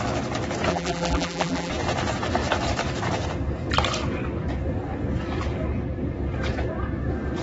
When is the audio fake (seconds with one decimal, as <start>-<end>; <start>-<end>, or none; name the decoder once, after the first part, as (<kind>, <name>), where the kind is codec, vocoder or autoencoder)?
0.7-1.7 (vocoder, BigVGAN v2)